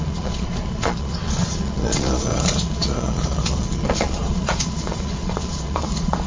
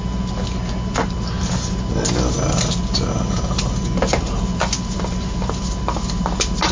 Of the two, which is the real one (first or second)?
second